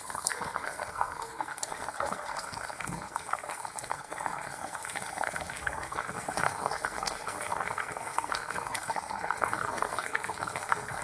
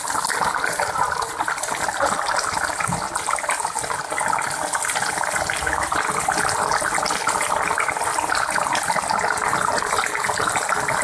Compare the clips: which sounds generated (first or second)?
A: first